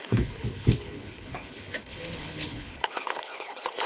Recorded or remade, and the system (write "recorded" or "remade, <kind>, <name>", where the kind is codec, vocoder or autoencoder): remade, codec, HILCodec